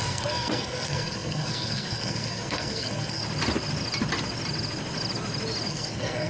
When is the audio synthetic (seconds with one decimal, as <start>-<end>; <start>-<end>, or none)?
0.0-3.2; 5.7-6.3